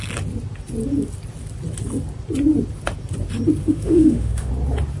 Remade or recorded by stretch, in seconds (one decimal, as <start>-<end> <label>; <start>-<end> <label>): 0.0-3.6 recorded; 3.6-4.5 remade; 4.5-5.0 recorded